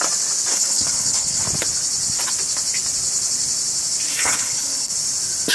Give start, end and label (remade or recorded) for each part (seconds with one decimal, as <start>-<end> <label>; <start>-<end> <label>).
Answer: 0.0-0.5 recorded; 0.5-1.4 remade; 1.4-4.1 recorded; 4.1-4.9 remade; 4.9-5.5 recorded